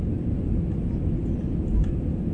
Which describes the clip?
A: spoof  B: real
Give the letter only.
B